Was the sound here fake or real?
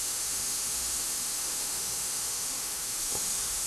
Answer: fake